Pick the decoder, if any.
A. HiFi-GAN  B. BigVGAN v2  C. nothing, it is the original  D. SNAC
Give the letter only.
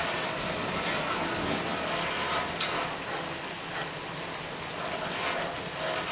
C